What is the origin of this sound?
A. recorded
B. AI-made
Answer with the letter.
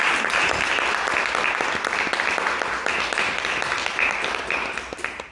A